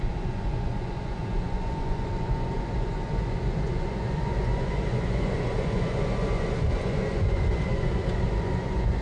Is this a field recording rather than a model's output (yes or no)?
no